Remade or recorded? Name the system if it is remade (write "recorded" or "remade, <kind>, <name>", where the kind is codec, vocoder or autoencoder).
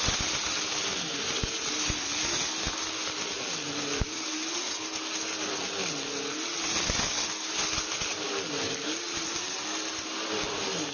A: recorded